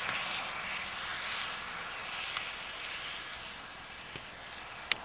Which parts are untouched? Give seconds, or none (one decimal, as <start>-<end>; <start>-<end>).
0.0-5.0